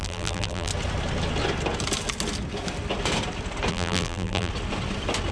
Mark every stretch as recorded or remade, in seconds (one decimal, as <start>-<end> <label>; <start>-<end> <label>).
0.0-0.7 remade; 0.7-3.7 recorded; 3.7-4.5 remade; 4.5-5.3 recorded

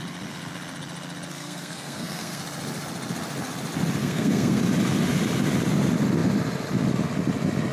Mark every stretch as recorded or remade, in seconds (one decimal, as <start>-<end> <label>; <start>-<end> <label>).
0.0-1.3 recorded; 1.3-2.4 remade; 2.4-4.0 recorded; 4.0-4.6 remade; 4.6-7.7 recorded

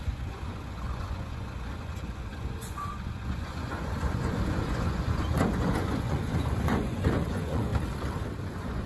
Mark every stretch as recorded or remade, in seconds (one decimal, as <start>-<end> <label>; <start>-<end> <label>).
0.0-7.7 remade; 7.7-8.4 recorded; 8.4-8.9 remade

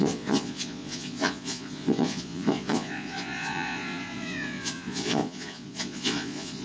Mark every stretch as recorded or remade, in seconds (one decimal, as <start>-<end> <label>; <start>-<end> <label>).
0.0-6.6 remade